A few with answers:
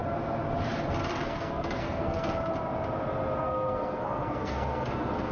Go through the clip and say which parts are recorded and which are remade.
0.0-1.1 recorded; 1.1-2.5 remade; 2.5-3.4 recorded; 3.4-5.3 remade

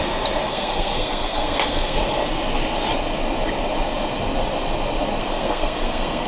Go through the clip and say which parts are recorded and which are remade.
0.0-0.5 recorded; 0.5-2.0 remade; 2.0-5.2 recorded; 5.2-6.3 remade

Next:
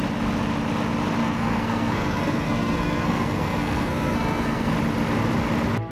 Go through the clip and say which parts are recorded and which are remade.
0.0-1.2 recorded; 1.2-4.7 remade; 4.7-5.9 recorded

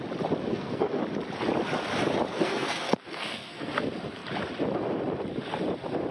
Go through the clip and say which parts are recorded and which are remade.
0.0-0.5 recorded; 0.5-1.0 remade; 1.0-2.3 recorded; 2.3-3.7 remade; 3.7-6.1 recorded

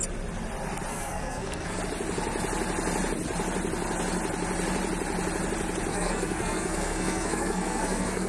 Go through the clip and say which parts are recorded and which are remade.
0.0-0.9 recorded; 0.9-1.8 remade; 1.8-5.9 recorded; 5.9-8.3 remade

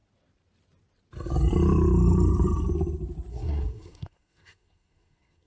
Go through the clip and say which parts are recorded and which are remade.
0.0-3.3 recorded; 3.3-5.5 remade